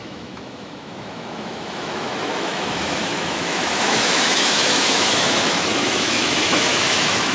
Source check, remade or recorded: remade